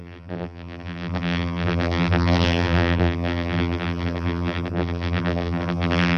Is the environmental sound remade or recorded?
remade